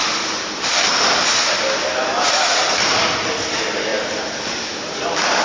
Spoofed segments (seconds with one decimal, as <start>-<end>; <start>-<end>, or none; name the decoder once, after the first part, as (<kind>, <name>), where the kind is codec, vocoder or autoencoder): 0.0-1.0 (vocoder, BigVGAN v2); 3.9-5.0